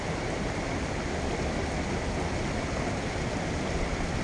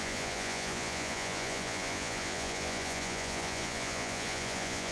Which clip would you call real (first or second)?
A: first